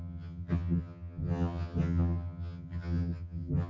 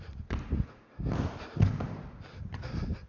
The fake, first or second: first